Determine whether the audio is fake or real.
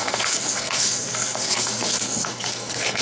fake